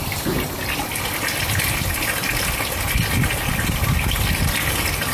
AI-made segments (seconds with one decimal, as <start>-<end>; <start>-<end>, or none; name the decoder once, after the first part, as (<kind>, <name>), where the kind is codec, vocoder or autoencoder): none